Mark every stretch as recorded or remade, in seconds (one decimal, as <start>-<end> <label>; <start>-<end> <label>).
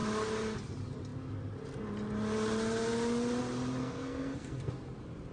0.0-3.8 recorded; 3.8-4.7 remade; 4.7-5.3 recorded